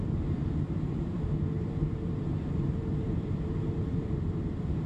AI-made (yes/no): yes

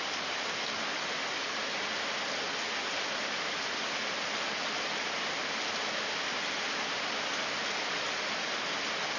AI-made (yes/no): no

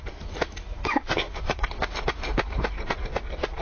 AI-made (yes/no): no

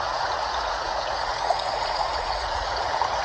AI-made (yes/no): yes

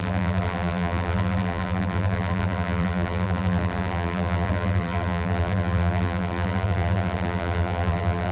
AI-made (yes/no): yes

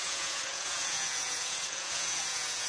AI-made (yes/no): yes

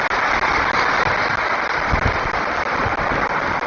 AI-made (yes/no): no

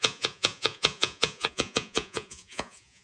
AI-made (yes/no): yes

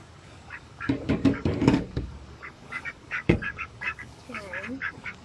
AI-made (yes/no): yes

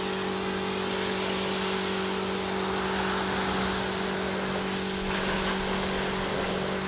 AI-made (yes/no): no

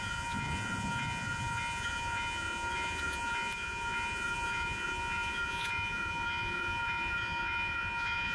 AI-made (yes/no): yes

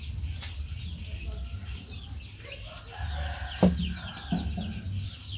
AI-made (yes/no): no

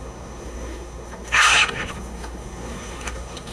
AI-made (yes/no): yes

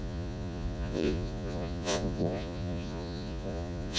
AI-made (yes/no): yes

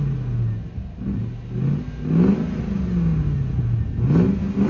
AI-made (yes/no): no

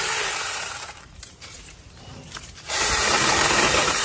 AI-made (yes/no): yes